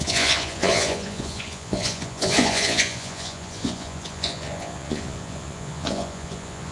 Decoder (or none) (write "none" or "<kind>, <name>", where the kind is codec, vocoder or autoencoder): vocoder, Vocos